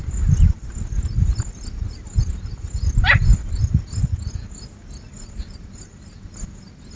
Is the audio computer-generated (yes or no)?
no